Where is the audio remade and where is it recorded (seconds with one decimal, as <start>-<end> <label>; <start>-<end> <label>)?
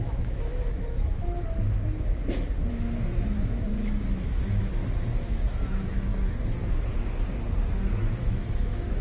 0.0-1.4 remade; 1.4-2.7 recorded; 2.7-4.7 remade; 4.7-5.2 recorded; 5.2-6.1 remade; 6.1-8.2 recorded; 8.2-9.0 remade